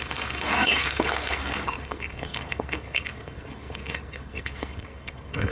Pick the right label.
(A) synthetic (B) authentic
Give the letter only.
A